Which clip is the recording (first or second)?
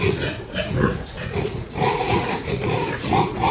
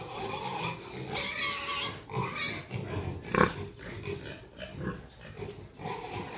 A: second